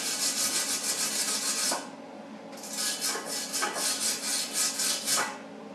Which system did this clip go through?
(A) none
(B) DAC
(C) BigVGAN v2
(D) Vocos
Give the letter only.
A